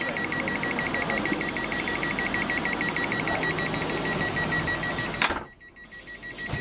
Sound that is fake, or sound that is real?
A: real